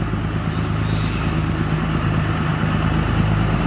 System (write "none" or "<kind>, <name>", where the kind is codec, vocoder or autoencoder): none